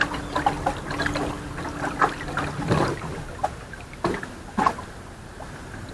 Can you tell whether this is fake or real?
real